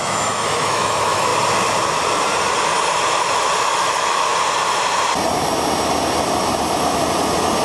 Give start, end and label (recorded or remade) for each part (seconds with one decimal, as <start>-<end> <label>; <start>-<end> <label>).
0.0-1.3 remade; 1.3-3.6 recorded; 3.6-4.3 remade; 4.3-7.6 recorded